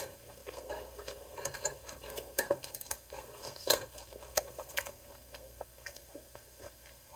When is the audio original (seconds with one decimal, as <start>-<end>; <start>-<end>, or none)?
none